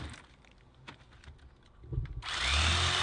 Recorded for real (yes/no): yes